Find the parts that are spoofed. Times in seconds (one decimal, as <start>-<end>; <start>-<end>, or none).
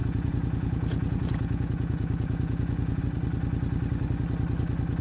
0.0-3.0